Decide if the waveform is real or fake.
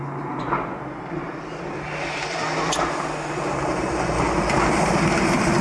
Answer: real